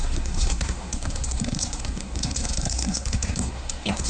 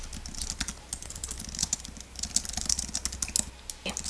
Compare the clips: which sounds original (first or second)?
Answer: second